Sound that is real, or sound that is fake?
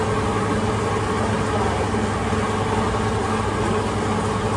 real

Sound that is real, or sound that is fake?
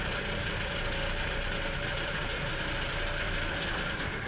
fake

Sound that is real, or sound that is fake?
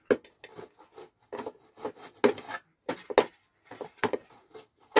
real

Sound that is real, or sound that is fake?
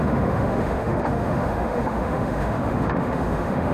fake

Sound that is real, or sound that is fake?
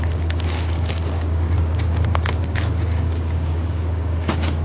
fake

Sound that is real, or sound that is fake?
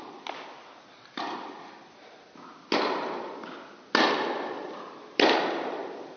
real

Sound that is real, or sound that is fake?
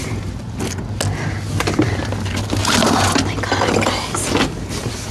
real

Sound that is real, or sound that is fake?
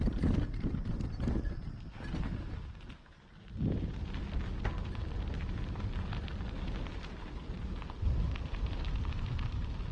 real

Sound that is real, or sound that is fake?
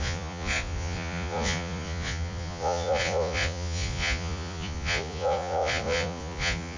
fake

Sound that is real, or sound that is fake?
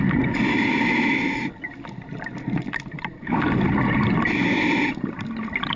real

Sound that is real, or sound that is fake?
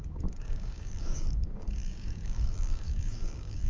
fake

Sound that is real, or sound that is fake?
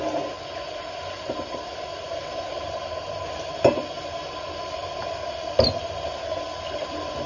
real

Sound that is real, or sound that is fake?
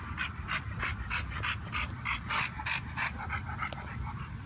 real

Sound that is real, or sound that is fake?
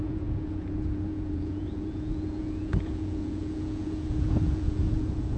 fake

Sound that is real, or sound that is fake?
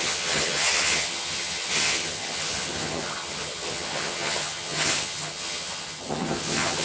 fake